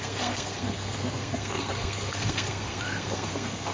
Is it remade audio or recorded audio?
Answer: remade